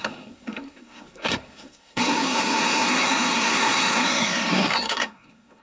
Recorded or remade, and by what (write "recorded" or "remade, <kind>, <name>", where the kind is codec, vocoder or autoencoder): remade, codec, SNAC